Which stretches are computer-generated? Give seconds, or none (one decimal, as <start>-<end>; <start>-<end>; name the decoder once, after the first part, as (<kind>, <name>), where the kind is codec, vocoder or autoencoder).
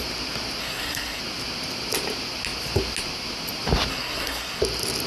0.6-1.2 (codec, SNAC); 3.9-4.6